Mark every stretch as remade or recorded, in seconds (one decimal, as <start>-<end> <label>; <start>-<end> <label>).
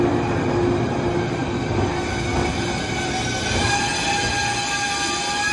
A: 0.0-5.5 recorded